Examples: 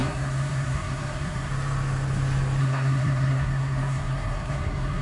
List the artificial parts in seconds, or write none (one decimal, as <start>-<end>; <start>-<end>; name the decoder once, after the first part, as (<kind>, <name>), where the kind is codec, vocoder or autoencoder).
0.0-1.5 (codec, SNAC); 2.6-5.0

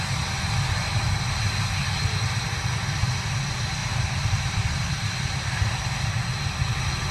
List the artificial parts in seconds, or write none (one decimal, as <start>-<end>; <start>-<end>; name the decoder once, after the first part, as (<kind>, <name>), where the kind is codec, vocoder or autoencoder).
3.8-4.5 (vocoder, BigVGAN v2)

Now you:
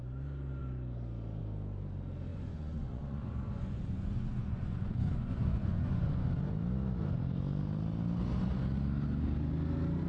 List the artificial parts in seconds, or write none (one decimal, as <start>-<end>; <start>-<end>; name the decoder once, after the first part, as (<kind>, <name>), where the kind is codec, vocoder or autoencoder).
2.3-6.3 (vocoder, Vocos)

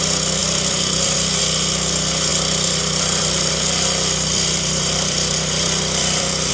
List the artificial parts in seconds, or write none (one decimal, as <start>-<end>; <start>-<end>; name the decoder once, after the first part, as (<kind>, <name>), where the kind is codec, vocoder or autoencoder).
0.4-1.4 (vocoder, BigVGAN v2); 2.3-6.5

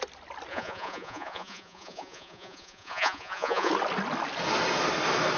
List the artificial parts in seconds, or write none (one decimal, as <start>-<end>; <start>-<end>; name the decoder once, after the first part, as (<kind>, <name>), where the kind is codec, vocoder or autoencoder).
0.5-3.7 (vocoder, Vocos)

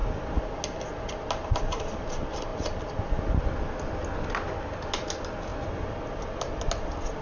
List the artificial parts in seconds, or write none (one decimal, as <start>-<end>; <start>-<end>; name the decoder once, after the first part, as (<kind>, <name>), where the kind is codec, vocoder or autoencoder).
none

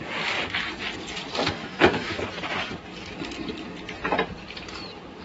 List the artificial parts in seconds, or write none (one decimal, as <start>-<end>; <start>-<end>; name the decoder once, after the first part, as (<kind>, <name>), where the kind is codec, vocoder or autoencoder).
1.6-2.2 (autoencoder, DAC-VAE)